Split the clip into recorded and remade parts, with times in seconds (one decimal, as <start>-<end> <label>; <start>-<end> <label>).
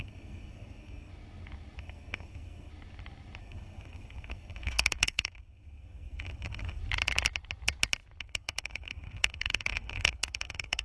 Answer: 0.0-1.1 remade; 1.1-1.8 recorded; 1.8-2.7 remade; 2.7-3.4 recorded; 3.4-6.8 remade; 6.8-8.2 recorded; 8.2-10.8 remade